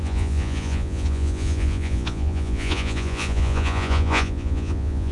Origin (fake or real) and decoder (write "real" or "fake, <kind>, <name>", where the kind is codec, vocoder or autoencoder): fake, vocoder, Vocos